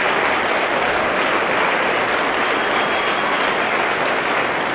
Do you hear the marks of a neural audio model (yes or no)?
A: no